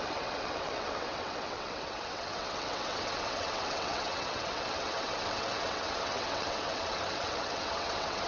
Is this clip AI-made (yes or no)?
yes